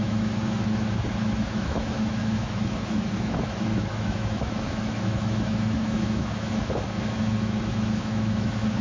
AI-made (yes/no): yes